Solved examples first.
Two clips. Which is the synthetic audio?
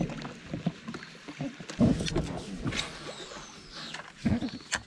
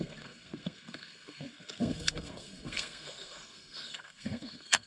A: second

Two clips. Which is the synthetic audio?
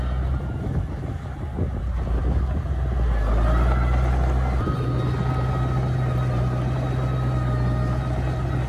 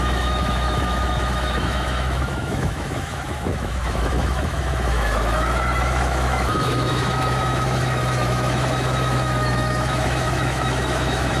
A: second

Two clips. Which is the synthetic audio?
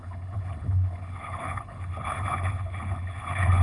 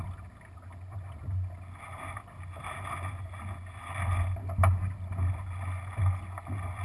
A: first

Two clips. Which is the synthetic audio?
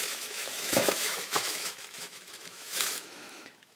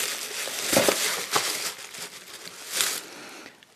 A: first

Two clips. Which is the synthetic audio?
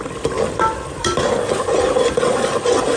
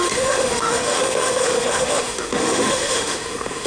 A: second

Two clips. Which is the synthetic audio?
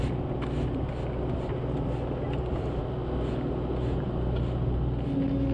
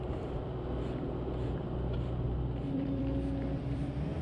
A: second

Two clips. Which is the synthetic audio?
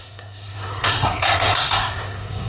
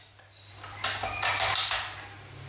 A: first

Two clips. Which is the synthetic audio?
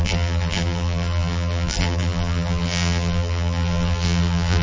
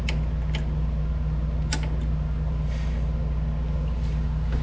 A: first